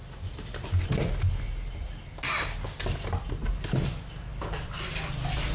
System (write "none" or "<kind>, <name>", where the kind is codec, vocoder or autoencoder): none